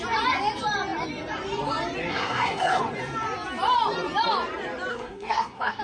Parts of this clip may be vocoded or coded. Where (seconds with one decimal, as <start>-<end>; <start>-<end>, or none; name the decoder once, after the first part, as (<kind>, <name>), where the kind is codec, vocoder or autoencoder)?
2.1-2.8 (codec, SNAC); 4.9-5.8